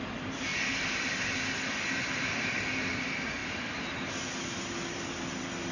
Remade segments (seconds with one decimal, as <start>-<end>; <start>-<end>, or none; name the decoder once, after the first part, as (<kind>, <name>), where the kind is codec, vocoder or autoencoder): 3.4-3.9 (vocoder, BigVGAN v2)